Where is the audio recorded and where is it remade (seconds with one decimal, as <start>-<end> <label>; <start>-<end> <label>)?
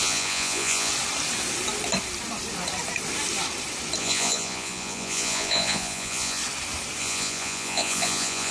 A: 0.0-0.9 remade; 0.9-4.0 recorded; 4.0-6.4 remade; 6.4-7.0 recorded; 7.0-8.5 remade